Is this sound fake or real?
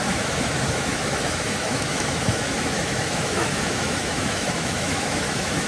fake